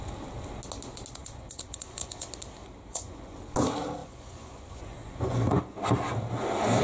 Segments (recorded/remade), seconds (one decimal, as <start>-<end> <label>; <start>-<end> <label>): 0.0-1.2 recorded; 1.2-2.3 remade; 2.3-2.9 recorded; 2.9-3.4 remade; 3.4-4.0 recorded; 4.0-5.6 remade; 5.6-6.8 recorded